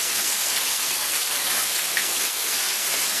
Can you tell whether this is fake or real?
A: fake